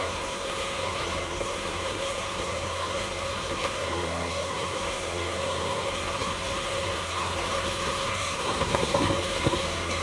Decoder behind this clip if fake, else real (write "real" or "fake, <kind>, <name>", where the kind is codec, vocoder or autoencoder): fake, codec, SNAC